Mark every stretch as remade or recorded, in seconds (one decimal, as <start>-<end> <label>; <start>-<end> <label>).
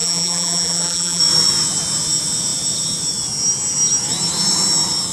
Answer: 0.0-1.2 remade; 1.2-5.1 recorded